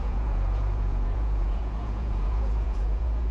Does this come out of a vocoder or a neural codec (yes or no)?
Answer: yes